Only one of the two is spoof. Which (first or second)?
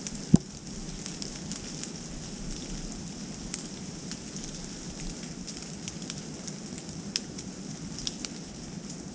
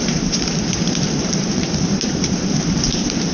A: second